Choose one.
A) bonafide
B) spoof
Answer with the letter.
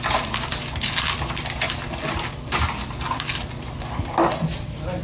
A